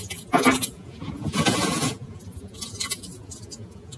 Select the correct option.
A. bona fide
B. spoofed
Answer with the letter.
B